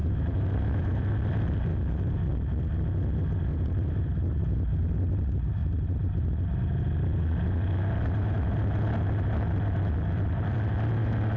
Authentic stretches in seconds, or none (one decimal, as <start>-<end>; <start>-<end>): 1.1-3.5; 4.9-11.4